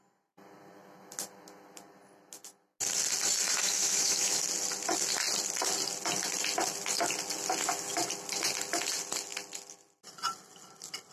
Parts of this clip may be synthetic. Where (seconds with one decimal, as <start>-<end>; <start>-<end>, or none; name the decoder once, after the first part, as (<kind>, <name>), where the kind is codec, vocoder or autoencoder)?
3.6-4.4 (autoencoder, DAC-VAE)